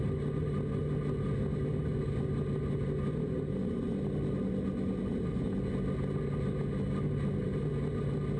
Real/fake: real